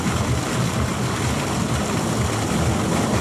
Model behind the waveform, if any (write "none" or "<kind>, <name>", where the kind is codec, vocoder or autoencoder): none